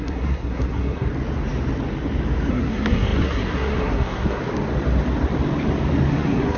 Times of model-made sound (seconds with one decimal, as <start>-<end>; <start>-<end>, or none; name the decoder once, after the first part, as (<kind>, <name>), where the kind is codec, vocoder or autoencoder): 0.0-1.1 (codec, SNAC); 2.5-4.4; 6.1-6.6